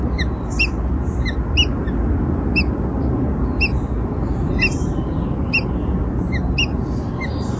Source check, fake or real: real